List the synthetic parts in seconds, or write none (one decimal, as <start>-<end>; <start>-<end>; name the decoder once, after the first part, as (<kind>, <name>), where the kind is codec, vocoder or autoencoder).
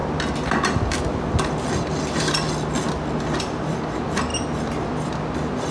none